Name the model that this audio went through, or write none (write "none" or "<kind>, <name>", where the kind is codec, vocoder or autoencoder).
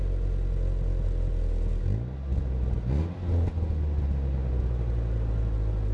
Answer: none